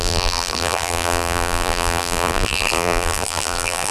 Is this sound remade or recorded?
remade